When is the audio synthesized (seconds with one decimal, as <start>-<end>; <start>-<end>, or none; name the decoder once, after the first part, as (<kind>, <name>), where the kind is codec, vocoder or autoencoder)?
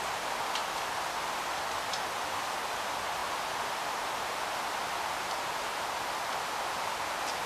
none